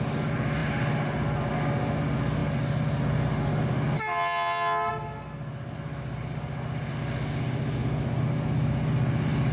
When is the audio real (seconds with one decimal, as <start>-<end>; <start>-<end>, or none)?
0.0-9.5